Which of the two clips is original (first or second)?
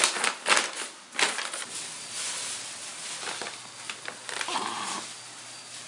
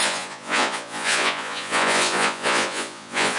first